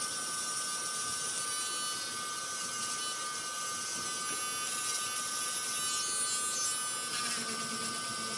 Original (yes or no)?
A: yes